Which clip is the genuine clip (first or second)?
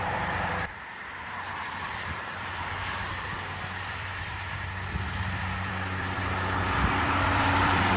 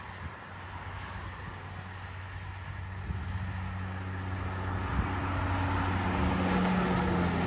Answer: second